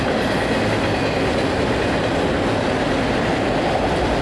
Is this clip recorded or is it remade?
recorded